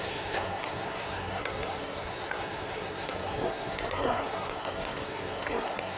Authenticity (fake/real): fake